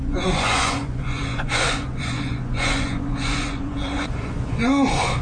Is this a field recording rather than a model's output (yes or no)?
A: no